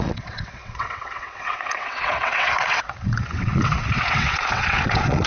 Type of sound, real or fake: fake